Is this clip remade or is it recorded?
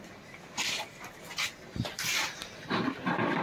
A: recorded